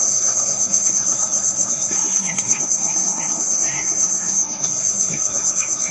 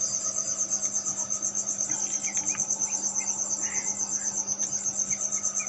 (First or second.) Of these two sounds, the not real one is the first